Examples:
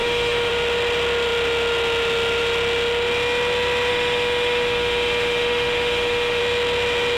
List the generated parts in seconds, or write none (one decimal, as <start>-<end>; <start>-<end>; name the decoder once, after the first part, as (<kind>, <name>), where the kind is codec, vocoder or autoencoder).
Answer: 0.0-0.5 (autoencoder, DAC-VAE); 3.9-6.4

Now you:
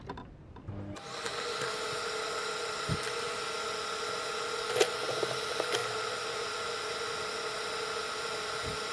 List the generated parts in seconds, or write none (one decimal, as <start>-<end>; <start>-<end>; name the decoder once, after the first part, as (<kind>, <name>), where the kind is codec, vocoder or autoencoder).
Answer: none

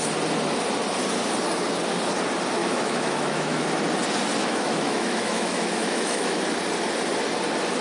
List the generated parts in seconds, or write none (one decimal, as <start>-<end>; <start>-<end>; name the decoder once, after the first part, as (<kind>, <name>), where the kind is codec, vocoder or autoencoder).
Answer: 2.6-3.6 (autoencoder, DAC-VAE); 4.4-6.4

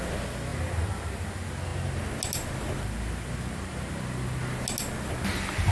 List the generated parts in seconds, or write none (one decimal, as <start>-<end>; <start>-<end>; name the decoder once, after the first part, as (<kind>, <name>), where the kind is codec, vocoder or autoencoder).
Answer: none

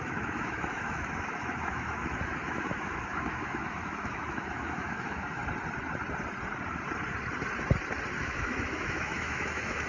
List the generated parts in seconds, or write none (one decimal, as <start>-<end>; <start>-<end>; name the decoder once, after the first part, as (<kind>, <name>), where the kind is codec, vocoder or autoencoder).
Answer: 0.0-5.4 (autoencoder, DAC-VAE); 8.2-9.9